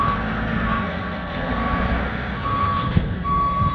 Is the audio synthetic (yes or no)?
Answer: yes